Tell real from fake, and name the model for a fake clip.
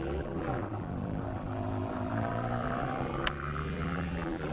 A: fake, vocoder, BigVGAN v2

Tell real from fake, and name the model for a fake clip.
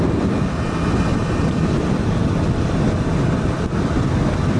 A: real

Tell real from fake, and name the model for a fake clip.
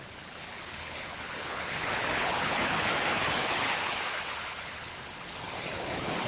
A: fake, codec, HILCodec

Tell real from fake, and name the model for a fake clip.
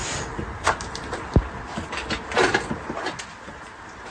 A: real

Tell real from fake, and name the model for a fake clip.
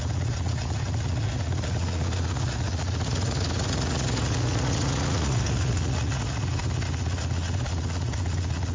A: fake, vocoder, Vocos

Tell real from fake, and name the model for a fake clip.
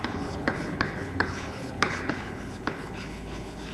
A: fake, codec, HILCodec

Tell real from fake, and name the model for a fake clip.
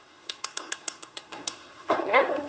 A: fake, codec, SNAC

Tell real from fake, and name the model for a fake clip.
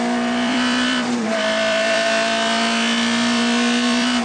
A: fake, vocoder, BigVGAN v2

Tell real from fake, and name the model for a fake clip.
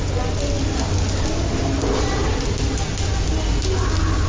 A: real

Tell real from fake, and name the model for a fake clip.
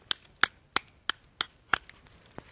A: real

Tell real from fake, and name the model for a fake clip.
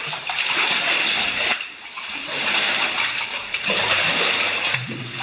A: fake, vocoder, BigVGAN v2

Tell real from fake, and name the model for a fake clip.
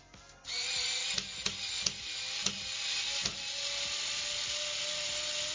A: real